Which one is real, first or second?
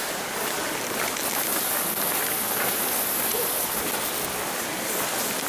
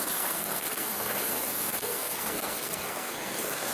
first